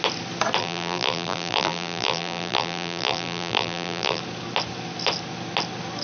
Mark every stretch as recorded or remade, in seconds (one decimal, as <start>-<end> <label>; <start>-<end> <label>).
0.0-0.6 recorded; 0.6-4.2 remade; 4.2-6.0 recorded